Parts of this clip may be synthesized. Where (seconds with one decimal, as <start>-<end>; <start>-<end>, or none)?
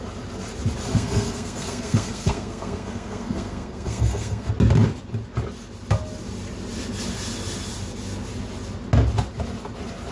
0.9-4.5